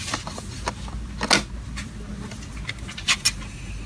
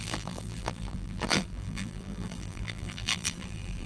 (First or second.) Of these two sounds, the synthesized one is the second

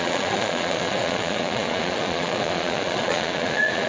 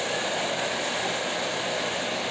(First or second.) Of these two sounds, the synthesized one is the first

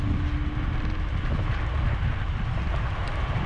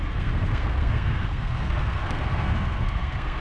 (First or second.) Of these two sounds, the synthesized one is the second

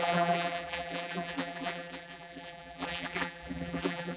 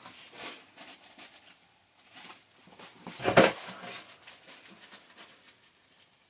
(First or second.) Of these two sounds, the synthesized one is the first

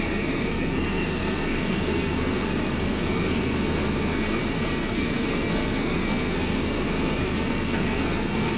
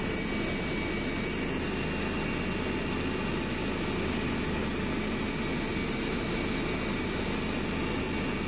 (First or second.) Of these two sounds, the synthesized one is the first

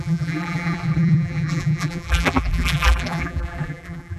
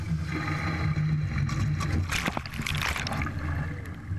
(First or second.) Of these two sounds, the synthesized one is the first